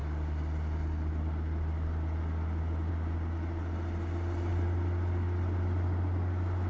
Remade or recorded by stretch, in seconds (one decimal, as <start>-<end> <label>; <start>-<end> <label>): 0.0-6.7 recorded